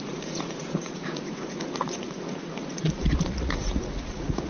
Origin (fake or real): fake